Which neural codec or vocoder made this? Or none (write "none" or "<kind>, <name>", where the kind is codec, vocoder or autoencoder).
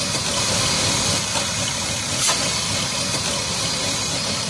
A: none